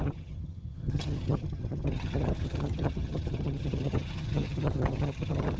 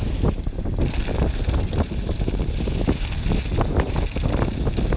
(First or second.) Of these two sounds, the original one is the second